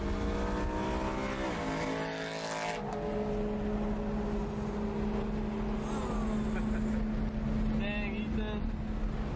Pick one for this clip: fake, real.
real